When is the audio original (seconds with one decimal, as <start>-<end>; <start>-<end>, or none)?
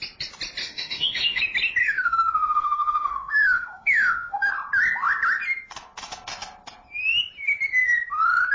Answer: 0.0-0.6; 1.4-1.8; 4.5-8.5